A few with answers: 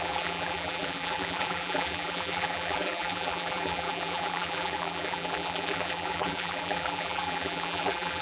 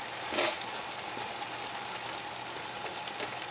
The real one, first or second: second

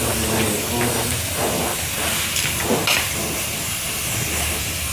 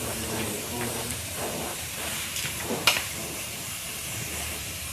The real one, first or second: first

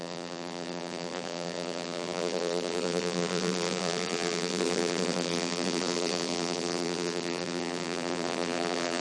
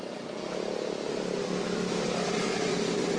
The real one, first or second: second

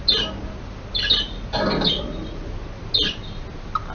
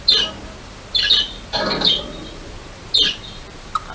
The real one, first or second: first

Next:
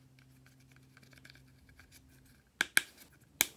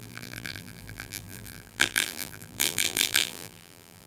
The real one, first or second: first